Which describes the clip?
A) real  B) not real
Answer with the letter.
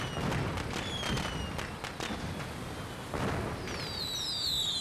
A